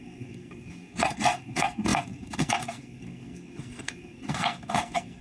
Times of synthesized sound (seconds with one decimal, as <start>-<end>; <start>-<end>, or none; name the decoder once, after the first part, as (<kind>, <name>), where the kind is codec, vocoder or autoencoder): 0.0-5.2 (codec, SNAC)